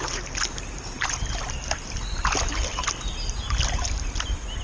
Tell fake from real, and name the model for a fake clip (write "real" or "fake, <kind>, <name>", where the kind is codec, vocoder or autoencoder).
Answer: real